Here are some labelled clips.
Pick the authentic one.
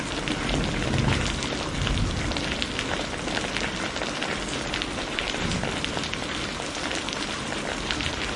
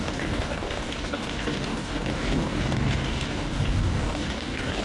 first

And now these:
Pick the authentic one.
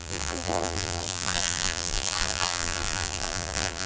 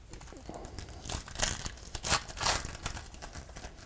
second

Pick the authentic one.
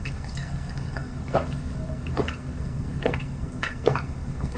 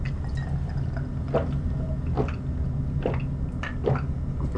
second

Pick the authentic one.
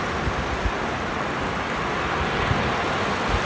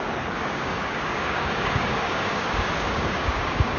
first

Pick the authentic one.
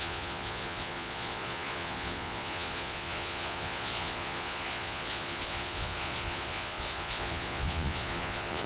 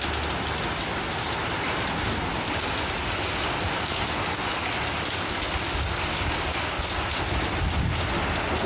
second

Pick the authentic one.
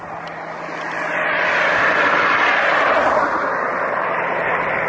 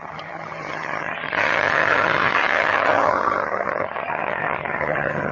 first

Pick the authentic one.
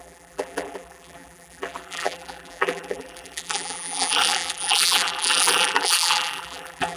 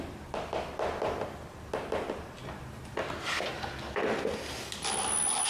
second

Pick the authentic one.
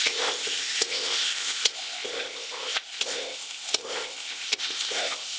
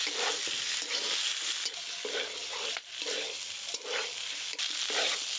second